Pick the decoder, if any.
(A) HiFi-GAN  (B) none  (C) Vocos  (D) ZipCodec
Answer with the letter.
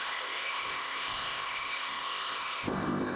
D